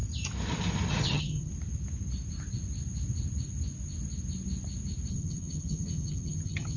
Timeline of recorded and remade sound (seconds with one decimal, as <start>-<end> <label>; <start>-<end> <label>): 0.0-0.9 recorded; 0.9-1.5 remade; 1.5-5.1 recorded; 5.1-6.8 remade